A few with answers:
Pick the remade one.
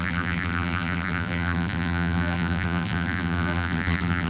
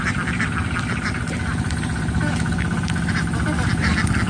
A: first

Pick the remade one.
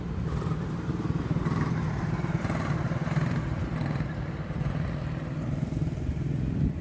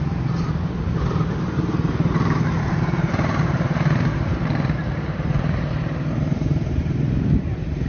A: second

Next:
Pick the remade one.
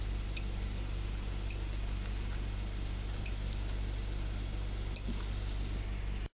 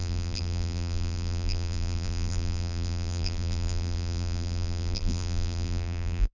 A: second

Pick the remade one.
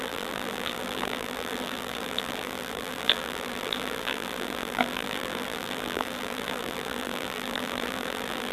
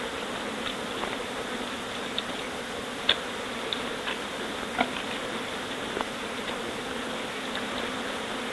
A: first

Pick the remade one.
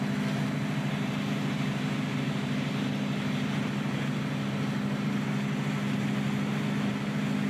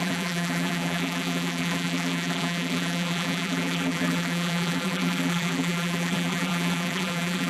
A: second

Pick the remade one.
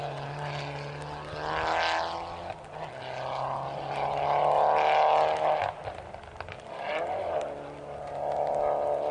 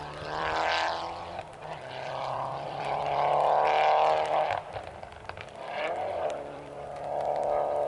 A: second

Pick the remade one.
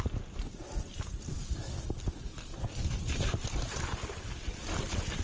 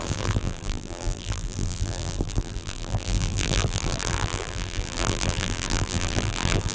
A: second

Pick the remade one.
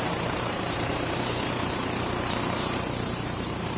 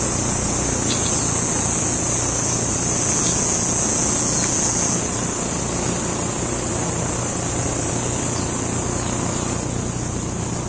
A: first